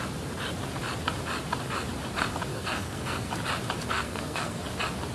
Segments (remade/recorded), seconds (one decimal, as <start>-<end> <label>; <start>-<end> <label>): 0.0-2.5 recorded; 2.5-3.3 remade; 3.3-3.8 recorded; 3.8-4.6 remade; 4.6-5.1 recorded